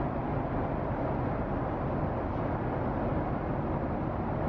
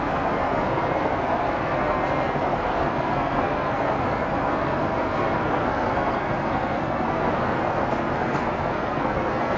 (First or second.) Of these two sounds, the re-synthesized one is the second